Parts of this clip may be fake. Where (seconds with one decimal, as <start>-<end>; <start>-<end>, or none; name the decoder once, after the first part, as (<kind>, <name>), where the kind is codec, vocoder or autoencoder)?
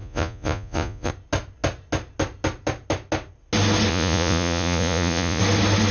0.0-1.1 (vocoder, Vocos); 3.9-5.4